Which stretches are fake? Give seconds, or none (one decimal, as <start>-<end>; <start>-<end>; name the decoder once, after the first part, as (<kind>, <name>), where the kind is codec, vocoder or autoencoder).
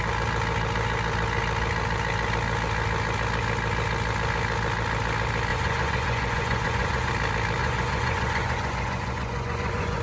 5.5-7.1 (vocoder, Vocos); 7.6-10.0